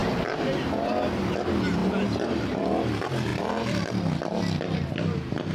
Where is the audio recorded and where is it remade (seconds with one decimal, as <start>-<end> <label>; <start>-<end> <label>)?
0.0-0.7 remade; 0.7-1.8 recorded; 1.8-2.4 remade; 2.4-3.3 recorded; 3.3-3.9 remade; 3.9-5.5 recorded